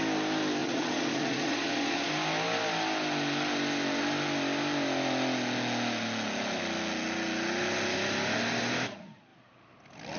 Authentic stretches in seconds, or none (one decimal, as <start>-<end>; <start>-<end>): 0.0-0.6; 2.1-10.2